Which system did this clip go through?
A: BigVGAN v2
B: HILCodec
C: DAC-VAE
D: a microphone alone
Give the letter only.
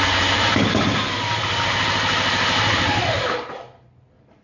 D